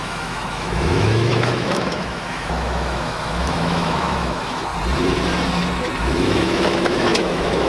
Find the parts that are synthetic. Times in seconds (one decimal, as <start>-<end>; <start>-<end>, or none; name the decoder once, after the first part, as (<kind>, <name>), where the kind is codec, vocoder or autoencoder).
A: 0.0-4.7 (autoencoder, DAC-VAE); 6.0-7.7